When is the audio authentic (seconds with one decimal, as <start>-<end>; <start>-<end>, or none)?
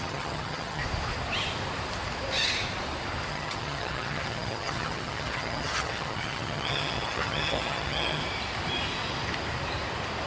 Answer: 0.8-3.3; 8.2-10.3